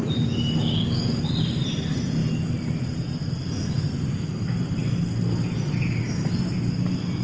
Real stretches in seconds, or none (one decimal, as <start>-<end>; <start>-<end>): 0.0-0.6; 1.2-7.2